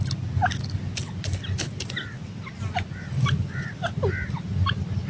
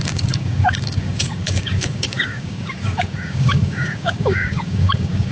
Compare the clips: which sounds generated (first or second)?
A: second